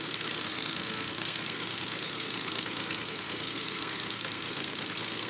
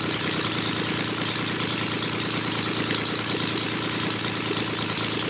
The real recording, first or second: second